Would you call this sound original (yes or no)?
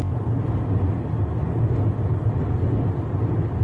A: yes